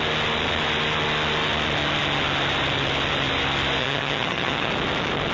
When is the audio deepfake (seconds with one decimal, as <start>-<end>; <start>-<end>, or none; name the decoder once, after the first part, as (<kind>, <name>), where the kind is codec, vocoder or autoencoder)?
3.8-4.7 (vocoder, HiFi-GAN)